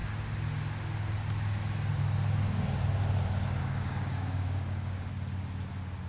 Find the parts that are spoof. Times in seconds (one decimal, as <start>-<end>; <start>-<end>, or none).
3.6-5.1